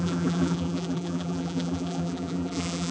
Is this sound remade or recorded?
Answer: remade